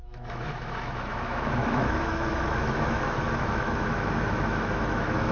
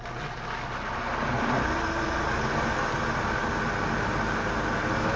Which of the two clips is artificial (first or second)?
first